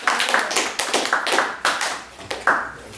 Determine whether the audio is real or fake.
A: real